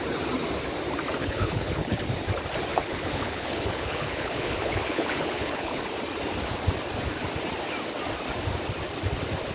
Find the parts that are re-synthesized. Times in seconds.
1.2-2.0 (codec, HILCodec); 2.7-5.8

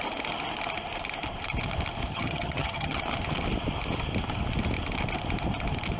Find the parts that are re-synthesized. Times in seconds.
2.1-3.0 (vocoder, HiFi-GAN)

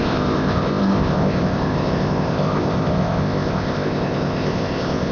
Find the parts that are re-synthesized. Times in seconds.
0.0-5.1 (codec, ZipCodec)

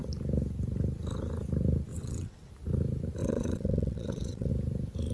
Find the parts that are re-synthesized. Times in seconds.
1.9-2.5 (vocoder, WaveNeXt); 3.2-4.5

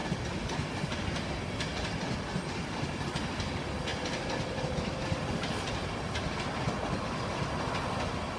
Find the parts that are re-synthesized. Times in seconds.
none